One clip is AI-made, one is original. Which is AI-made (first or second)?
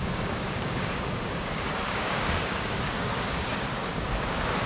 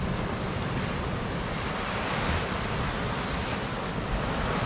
first